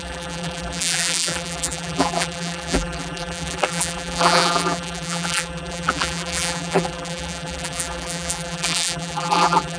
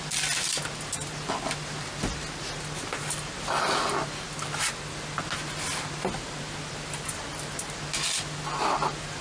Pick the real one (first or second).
second